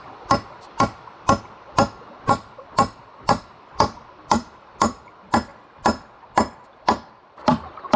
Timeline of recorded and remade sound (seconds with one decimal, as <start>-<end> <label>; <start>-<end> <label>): 0.0-8.0 recorded